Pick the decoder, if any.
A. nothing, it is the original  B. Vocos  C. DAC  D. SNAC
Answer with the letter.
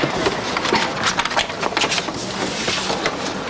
A